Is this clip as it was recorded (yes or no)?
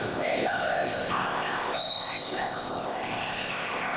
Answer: no